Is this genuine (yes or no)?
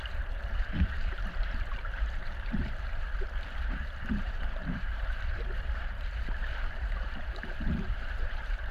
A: no